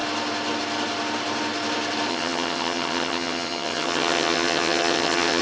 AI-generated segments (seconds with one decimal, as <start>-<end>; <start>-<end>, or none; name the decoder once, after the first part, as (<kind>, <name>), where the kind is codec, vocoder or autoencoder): 2.1-5.4 (vocoder, HiFi-GAN)